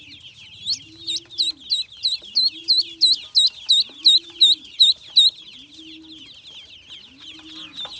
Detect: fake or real real